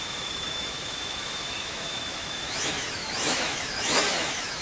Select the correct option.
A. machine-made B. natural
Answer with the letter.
A